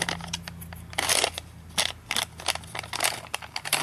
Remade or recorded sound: recorded